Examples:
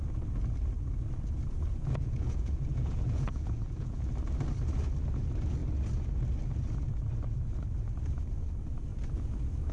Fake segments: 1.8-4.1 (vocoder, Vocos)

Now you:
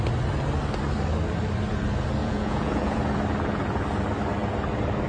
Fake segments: 2.2-3.0 (vocoder, Vocos)

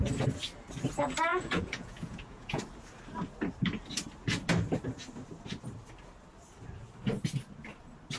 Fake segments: 1.3-2.6 (vocoder, Vocos)

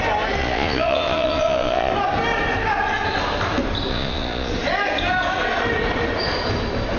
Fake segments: 0.4-1.9 (vocoder, Vocos); 3.9-4.5

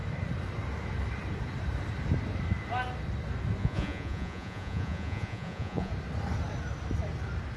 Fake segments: 3.6-5.9 (vocoder, Vocos)

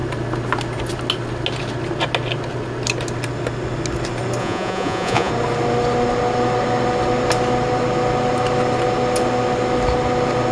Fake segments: 4.4-5.3 (vocoder, Vocos)

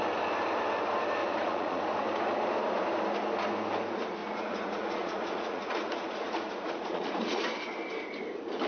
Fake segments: 1.2-1.8 (vocoder, Vocos); 4.2-7.4

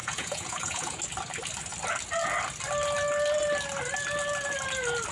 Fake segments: 0.0-1.0 (vocoder, Vocos)